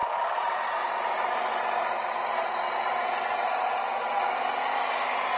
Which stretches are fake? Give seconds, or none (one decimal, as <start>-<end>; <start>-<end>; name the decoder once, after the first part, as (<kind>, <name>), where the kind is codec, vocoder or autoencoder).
0.8-1.5 (vocoder, BigVGAN v2); 2.1-3.4